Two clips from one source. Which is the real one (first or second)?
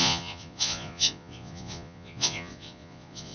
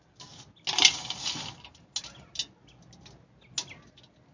second